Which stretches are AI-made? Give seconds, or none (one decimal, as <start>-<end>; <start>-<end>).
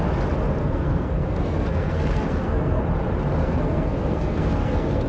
0.6-2.8; 3.4-5.1